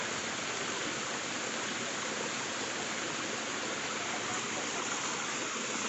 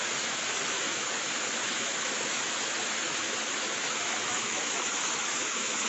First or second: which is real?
first